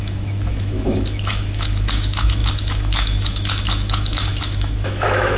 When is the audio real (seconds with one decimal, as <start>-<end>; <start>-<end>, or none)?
none